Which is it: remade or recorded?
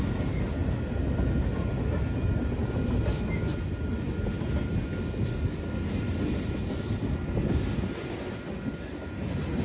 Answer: recorded